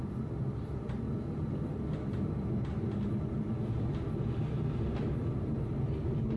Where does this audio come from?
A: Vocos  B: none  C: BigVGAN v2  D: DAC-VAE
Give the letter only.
B